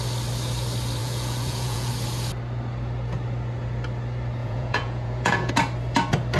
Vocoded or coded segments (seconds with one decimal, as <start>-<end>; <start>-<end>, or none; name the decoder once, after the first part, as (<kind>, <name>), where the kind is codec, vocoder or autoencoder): 1.0-1.9 (vocoder, Vocos); 4.4-5.5